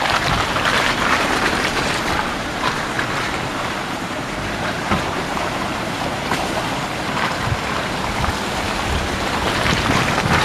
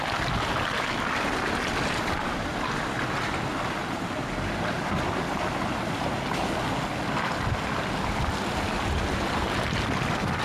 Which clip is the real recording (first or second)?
second